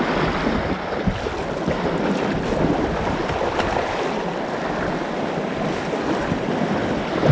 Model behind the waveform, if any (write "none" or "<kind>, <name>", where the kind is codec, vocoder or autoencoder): none